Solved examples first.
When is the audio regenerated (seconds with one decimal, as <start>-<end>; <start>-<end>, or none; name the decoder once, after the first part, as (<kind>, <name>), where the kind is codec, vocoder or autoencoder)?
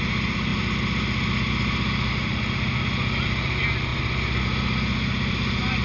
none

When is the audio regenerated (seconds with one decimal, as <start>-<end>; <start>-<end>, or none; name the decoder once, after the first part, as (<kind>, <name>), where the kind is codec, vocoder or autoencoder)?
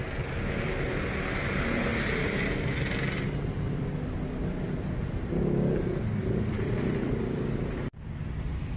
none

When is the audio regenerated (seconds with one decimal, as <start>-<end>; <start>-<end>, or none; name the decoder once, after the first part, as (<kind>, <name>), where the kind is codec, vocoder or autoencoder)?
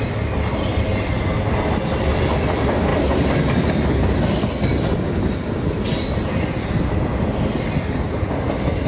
none